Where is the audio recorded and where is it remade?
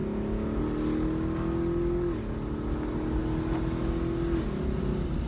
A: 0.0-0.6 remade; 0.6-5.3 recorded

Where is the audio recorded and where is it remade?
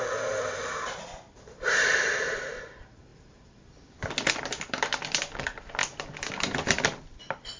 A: 0.0-7.6 remade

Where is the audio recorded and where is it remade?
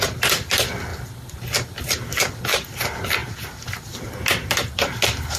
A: 0.0-5.4 recorded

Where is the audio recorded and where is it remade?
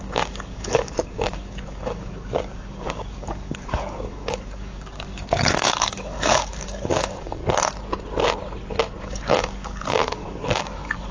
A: 0.0-7.4 remade; 7.4-9.0 recorded; 9.0-11.1 remade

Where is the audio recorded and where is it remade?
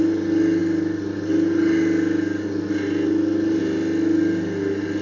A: 0.0-5.0 recorded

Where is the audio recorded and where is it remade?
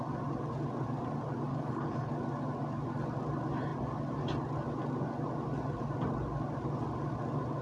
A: 0.0-1.5 recorded; 1.5-2.1 remade; 2.1-7.6 recorded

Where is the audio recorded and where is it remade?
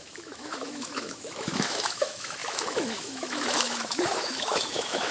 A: 0.0-5.1 remade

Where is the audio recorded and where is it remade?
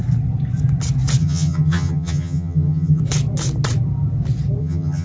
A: 0.0-1.2 recorded; 1.2-3.0 remade; 3.0-4.6 recorded; 4.6-5.0 remade